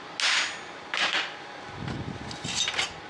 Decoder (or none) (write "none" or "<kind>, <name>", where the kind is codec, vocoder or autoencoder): none